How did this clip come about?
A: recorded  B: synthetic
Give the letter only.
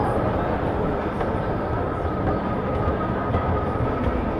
A